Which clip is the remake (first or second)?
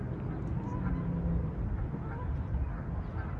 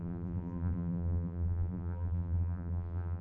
second